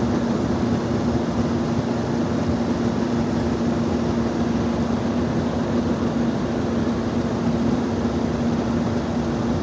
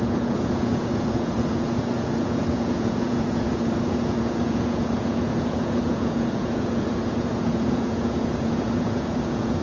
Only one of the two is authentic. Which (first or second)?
first